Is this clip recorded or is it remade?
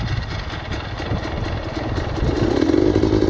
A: recorded